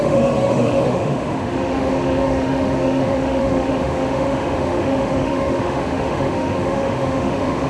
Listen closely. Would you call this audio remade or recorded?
remade